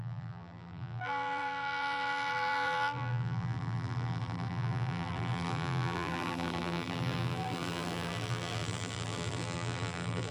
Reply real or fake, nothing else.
fake